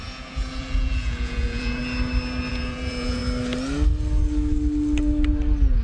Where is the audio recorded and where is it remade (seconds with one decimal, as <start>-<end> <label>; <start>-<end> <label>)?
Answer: 0.0-1.8 remade; 1.8-2.5 recorded; 2.5-3.2 remade; 3.2-5.8 recorded

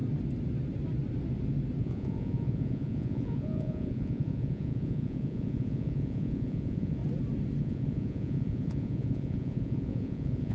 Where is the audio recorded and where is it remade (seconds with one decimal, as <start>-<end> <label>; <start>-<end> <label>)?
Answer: 0.0-1.8 recorded; 1.8-7.0 remade; 7.0-7.6 recorded; 7.6-10.5 remade

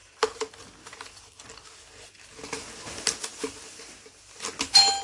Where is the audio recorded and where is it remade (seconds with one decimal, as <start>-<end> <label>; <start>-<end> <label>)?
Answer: 0.0-5.0 recorded

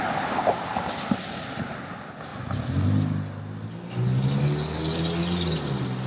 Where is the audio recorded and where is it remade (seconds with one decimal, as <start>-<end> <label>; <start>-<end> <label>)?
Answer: 0.0-6.1 recorded